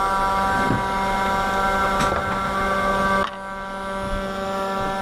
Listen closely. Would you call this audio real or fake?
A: real